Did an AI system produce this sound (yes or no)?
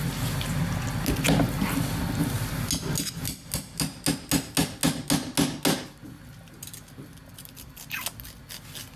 no